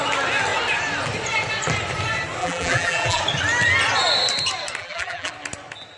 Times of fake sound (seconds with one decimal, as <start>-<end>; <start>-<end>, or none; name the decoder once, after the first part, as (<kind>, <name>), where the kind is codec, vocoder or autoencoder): 2.4-3.2 (vocoder, BigVGAN v2); 4.8-5.3